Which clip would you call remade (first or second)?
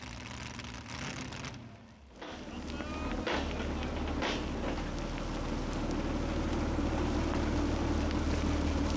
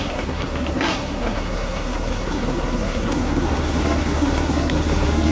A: second